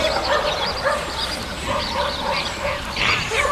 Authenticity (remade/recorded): remade